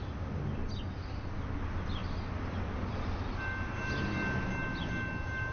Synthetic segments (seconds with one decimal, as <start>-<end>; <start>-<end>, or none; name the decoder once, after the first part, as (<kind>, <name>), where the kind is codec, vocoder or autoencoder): none